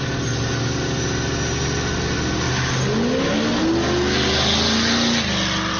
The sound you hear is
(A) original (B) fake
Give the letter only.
A